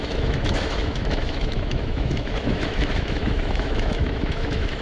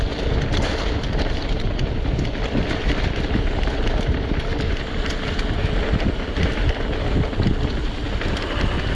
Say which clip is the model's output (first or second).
first